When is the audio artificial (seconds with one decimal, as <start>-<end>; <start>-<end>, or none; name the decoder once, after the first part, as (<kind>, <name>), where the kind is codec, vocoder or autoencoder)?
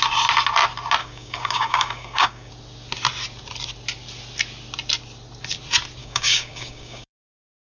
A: 1.0-2.5 (codec, DAC); 6.0-7.8